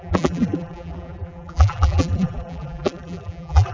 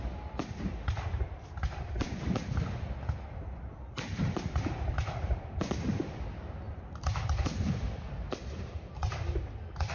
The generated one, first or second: first